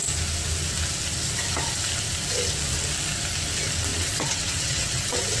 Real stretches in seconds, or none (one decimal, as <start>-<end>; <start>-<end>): 0.0-3.9